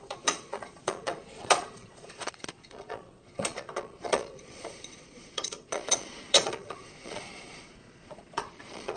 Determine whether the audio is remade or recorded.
remade